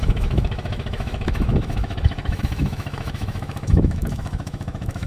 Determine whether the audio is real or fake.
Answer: fake